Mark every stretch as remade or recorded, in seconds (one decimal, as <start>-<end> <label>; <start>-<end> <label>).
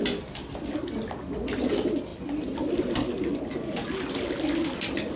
0.0-5.2 recorded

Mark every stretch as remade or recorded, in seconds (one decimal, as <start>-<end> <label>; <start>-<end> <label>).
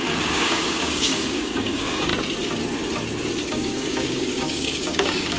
0.0-2.1 remade; 2.1-3.5 recorded; 3.5-5.4 remade